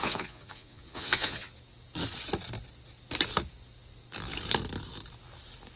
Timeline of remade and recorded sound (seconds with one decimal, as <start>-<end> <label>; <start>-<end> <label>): 0.0-1.5 remade; 1.5-5.8 recorded